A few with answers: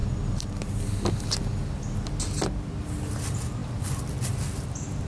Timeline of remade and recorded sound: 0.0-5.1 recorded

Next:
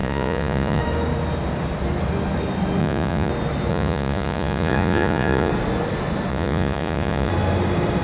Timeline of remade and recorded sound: 0.0-0.8 remade; 0.8-2.8 recorded; 2.8-3.3 remade; 3.3-3.7 recorded; 3.7-5.5 remade; 5.5-6.3 recorded; 6.3-7.3 remade; 7.3-8.0 recorded

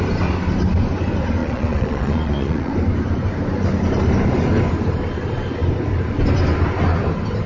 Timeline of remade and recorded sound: 0.0-1.4 recorded; 1.4-2.7 remade; 2.7-7.5 recorded

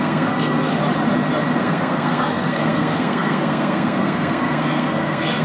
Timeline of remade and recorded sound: 0.0-0.8 remade; 0.8-1.6 recorded; 1.6-5.4 remade

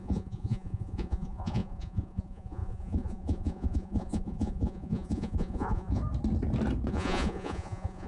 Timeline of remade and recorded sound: 0.0-6.0 remade; 6.0-6.9 recorded; 6.9-8.1 remade

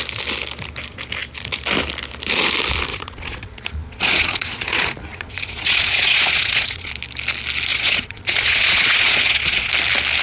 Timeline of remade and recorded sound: 0.0-2.9 recorded; 2.9-6.9 remade; 6.9-7.7 recorded; 7.7-9.7 remade; 9.7-10.2 recorded

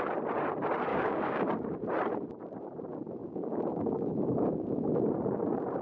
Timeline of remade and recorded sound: 0.0-0.9 recorded; 0.9-1.5 remade; 1.5-3.2 recorded; 3.2-4.8 remade; 4.8-5.8 recorded